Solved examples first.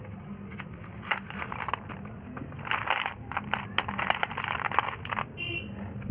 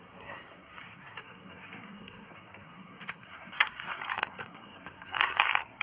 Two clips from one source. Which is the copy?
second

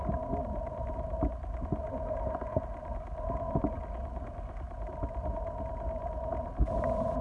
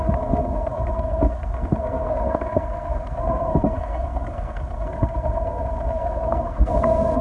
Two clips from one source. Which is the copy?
second